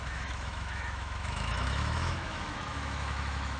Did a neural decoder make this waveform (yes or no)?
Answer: yes